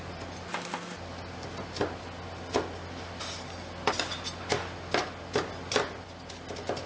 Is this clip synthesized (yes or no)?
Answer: no